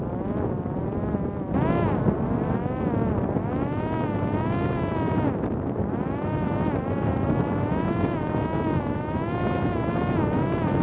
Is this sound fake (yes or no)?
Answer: no